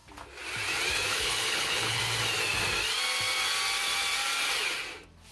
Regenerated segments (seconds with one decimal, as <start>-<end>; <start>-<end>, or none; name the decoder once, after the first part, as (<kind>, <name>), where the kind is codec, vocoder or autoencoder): 1.1-2.0 (codec, HILCodec)